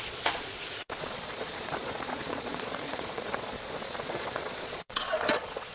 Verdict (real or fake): fake